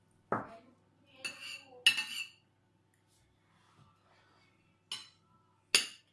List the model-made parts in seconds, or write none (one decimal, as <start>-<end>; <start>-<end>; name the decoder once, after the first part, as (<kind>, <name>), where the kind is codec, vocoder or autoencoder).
none